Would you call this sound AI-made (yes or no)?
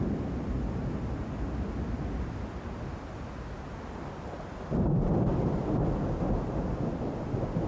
no